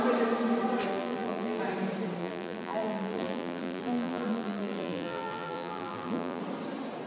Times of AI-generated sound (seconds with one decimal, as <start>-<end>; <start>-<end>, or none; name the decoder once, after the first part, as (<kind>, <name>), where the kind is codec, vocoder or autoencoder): 0.9-1.6 (vocoder, BigVGAN v2); 2.2-6.4